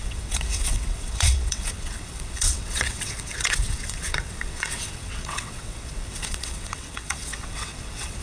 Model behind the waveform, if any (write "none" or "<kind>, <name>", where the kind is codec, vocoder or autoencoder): vocoder, WaveNeXt